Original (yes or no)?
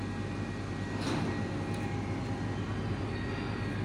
yes